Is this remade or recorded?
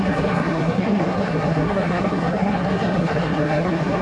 remade